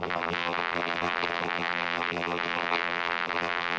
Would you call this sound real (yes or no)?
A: no